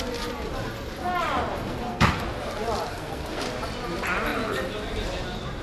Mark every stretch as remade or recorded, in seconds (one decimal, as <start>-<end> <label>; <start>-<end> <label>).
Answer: 0.0-1.5 recorded; 1.5-2.2 remade; 2.2-2.9 recorded; 2.9-3.4 remade; 3.4-5.6 recorded